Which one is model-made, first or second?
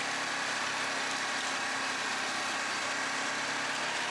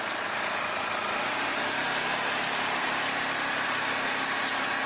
second